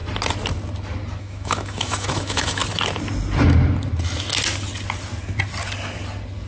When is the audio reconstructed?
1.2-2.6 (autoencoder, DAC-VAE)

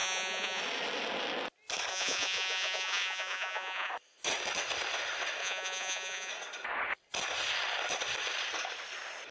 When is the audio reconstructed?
0.0-0.6 (vocoder, Vocos); 1.9-3.9; 5.4-6.3

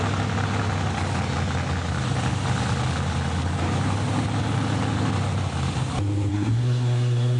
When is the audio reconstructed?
6.3-7.4 (codec, SNAC)

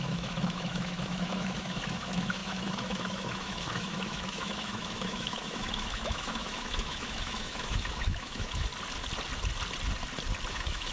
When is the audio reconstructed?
0.0-8.7 (autoencoder, DAC-VAE); 10.5-10.9

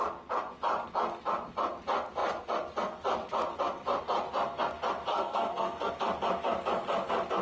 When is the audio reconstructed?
5.1-5.9 (codec, SNAC)